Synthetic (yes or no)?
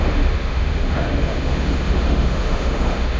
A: yes